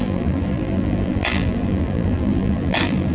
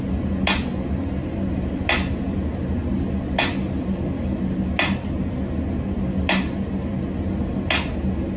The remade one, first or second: first